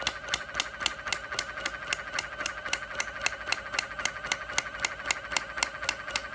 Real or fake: real